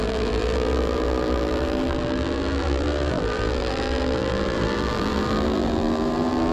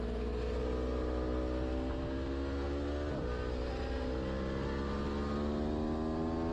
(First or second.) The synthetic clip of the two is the first